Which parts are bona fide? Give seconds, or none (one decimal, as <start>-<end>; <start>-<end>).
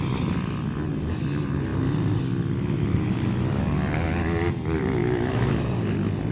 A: 0.0-5.0; 5.5-6.3